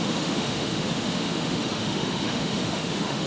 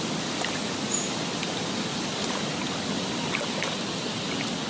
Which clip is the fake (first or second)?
first